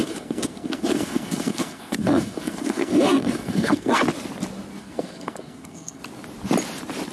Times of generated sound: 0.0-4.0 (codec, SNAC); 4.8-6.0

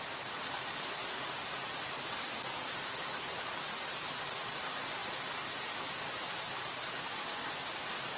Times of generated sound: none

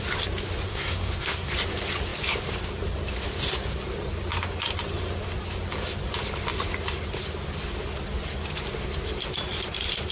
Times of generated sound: 0.7-1.5 (codec, SNAC)

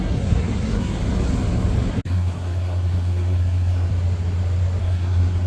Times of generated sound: 0.0-1.0 (codec, SNAC); 1.9-3.9; 4.8-5.5